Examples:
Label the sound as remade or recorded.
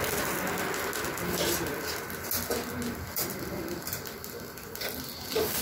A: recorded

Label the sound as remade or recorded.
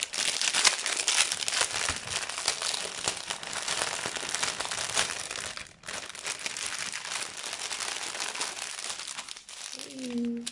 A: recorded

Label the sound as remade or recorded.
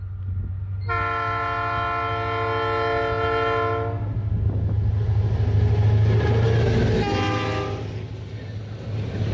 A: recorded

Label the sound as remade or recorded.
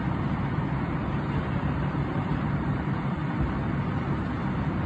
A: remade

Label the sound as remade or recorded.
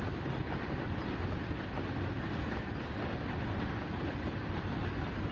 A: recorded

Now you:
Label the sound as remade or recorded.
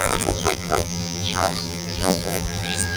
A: remade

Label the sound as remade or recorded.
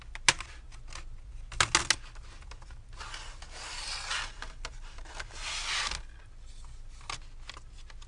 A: recorded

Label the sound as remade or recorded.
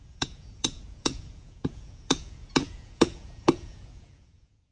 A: remade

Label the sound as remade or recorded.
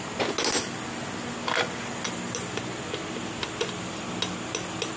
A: recorded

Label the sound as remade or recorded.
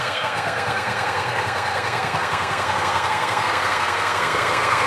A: remade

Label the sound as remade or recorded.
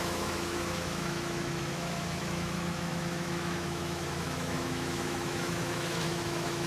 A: remade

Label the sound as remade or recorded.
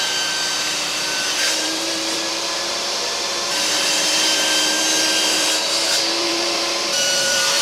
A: remade